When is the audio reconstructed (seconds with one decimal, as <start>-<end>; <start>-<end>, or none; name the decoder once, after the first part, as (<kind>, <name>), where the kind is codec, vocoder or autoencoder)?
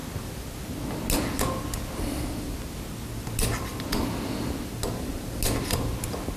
none